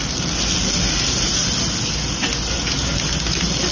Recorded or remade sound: recorded